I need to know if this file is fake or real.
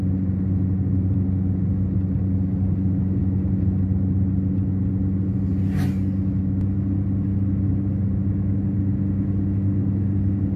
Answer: real